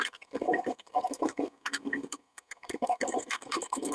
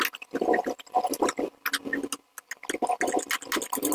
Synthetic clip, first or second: first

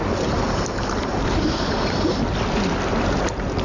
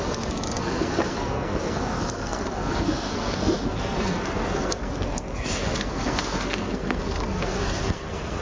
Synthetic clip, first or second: second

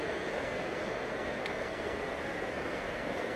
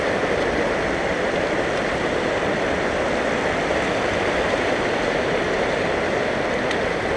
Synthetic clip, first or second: first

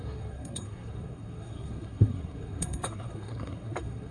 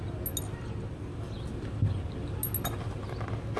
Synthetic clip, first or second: first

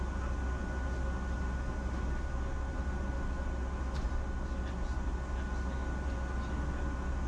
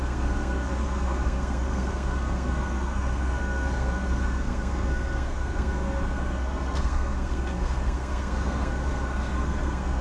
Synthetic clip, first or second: second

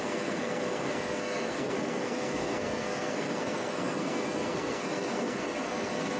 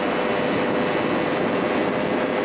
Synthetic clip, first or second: first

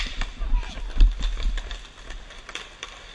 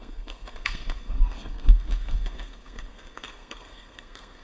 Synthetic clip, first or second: second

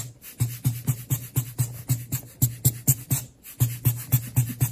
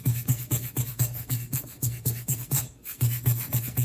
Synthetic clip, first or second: second